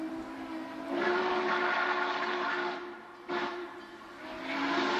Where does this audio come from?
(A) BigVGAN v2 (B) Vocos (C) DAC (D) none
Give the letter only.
D